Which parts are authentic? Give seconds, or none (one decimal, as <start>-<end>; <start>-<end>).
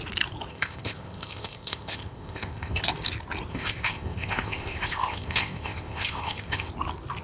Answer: 0.0-0.5; 2.8-3.5; 6.7-7.2